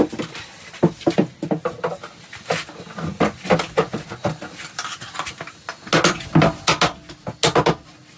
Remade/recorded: recorded